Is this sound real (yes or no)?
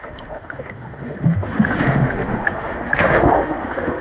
no